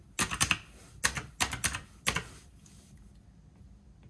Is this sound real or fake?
real